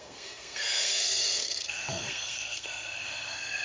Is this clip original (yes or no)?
no